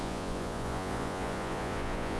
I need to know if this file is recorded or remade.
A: remade